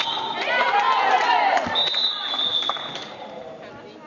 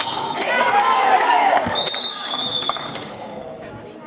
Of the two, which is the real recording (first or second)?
first